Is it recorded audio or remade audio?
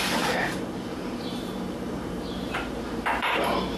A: remade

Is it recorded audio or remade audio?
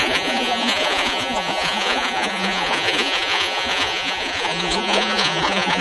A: remade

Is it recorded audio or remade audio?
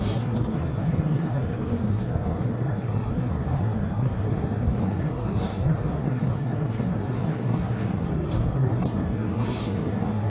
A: remade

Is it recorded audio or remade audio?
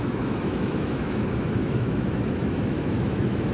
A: remade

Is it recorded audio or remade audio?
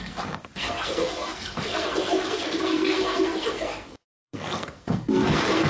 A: remade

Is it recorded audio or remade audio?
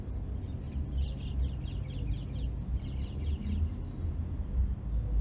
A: recorded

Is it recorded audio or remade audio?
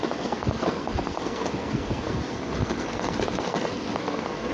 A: remade